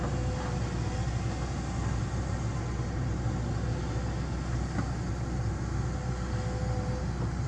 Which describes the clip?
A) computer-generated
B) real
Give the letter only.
B